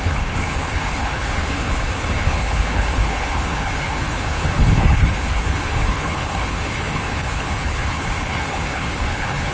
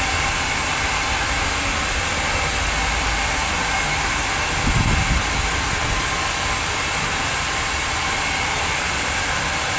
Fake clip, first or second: first